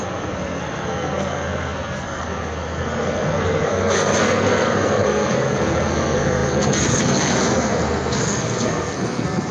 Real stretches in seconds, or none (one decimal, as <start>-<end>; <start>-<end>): none